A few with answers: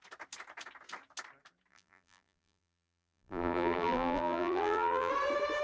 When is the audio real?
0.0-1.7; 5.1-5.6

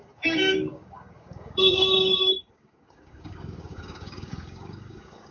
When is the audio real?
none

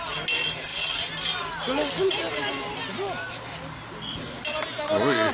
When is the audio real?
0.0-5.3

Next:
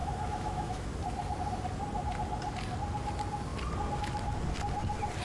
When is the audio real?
0.9-5.2